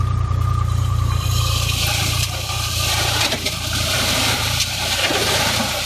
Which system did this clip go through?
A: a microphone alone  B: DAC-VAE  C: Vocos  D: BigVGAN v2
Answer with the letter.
D